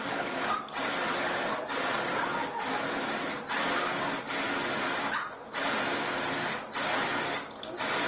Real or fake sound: real